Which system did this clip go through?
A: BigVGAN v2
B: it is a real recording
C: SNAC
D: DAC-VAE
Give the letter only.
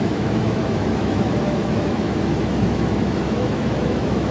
D